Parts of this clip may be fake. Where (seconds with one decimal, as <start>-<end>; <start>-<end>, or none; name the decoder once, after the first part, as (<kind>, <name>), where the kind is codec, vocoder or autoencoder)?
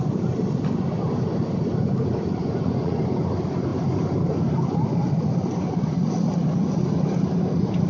2.4-3.0 (vocoder, Vocos)